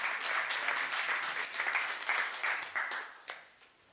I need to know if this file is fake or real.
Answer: real